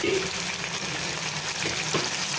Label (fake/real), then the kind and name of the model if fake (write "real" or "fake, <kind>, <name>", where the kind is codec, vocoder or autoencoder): real